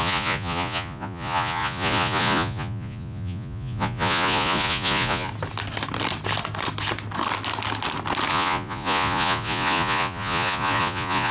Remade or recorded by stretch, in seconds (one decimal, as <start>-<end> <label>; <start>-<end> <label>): 0.0-5.3 remade; 5.3-8.3 recorded; 8.3-11.3 remade